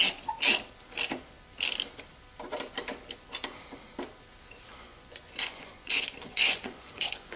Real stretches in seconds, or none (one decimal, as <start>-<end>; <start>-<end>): 0.0-4.7